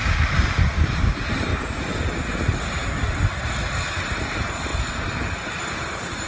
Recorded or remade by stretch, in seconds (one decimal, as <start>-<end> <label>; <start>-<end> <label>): 0.0-1.5 remade; 1.5-3.8 recorded; 3.8-4.7 remade; 4.7-5.7 recorded; 5.7-6.3 remade